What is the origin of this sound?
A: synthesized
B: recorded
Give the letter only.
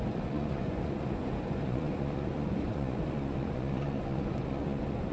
A